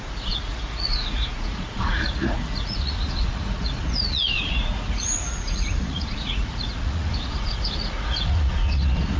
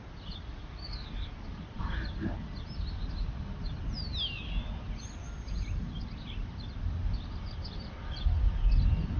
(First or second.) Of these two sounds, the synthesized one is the first